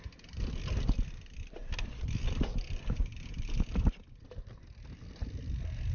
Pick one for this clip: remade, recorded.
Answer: recorded